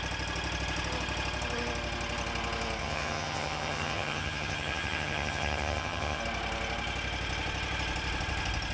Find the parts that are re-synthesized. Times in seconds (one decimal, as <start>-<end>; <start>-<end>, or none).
2.8-6.2